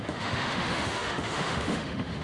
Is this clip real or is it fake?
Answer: fake